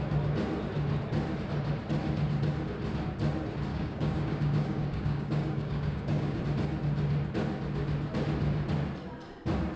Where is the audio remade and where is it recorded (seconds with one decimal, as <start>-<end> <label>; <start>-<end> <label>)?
0.0-3.7 recorded; 3.7-6.4 remade; 6.4-9.8 recorded